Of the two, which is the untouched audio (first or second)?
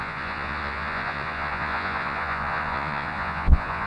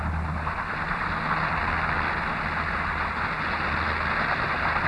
second